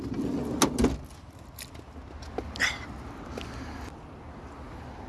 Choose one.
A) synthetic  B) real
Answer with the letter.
B